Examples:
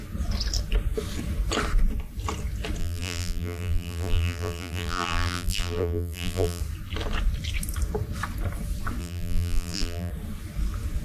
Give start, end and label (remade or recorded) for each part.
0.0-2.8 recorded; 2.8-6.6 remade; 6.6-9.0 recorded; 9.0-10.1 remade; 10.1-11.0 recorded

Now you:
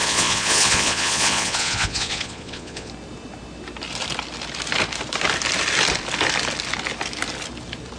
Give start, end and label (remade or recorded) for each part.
0.0-2.9 remade; 2.9-8.0 recorded

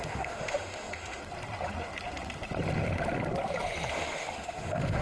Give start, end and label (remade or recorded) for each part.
0.0-1.2 remade; 1.2-3.9 recorded; 3.9-5.0 remade

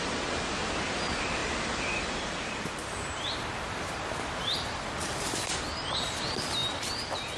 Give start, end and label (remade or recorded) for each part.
0.0-1.4 recorded; 1.4-5.6 remade; 5.6-6.6 recorded; 6.6-7.4 remade

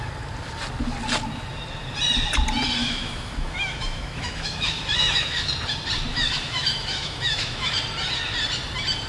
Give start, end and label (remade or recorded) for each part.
0.0-2.8 recorded; 2.8-5.5 remade; 5.5-6.1 recorded; 6.1-7.7 remade; 7.7-9.1 recorded

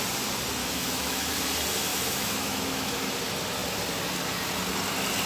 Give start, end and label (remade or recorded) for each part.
0.0-0.6 recorded; 0.6-1.3 remade; 1.3-1.9 recorded; 1.9-3.0 remade; 3.0-5.3 recorded

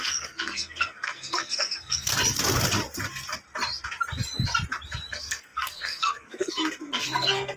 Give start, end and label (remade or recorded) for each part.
0.0-2.1 remade; 2.1-5.1 recorded; 5.1-7.6 remade

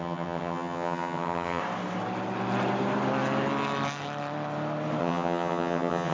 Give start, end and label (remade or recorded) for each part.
0.0-1.6 remade; 1.6-5.0 recorded; 5.0-6.1 remade